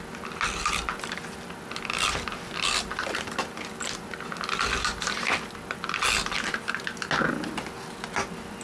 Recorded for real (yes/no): yes